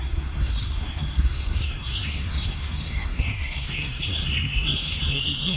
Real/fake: fake